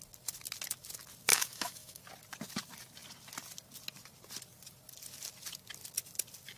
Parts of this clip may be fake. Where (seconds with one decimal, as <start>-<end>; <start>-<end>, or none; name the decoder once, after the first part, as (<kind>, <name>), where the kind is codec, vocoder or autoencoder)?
1.3-2.0 (autoencoder, DAC-VAE)